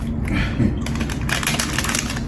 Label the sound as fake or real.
real